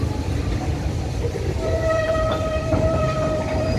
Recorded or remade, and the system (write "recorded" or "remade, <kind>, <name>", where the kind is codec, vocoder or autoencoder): remade, vocoder, BigVGAN v2